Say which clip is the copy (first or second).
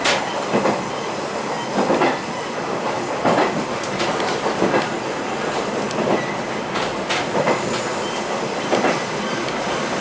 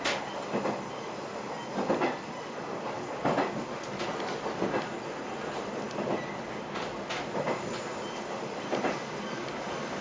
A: first